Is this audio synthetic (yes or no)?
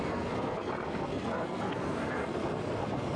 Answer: yes